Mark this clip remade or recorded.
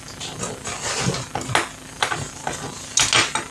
recorded